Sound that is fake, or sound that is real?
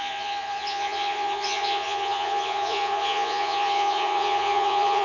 fake